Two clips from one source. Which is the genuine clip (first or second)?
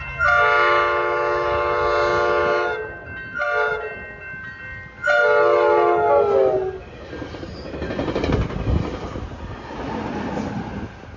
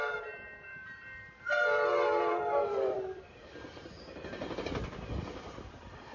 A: first